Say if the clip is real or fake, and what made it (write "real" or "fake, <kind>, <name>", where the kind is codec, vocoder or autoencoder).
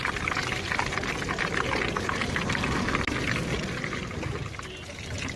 real